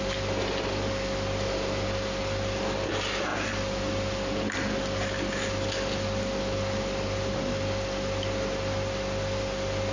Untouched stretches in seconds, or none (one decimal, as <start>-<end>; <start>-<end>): 0.0-9.9